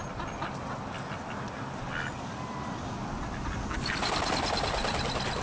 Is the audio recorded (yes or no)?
yes